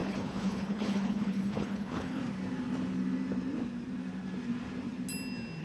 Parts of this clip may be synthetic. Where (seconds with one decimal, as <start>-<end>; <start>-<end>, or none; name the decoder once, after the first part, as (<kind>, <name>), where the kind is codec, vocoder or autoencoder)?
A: 0.0-2.2 (codec, HILCodec)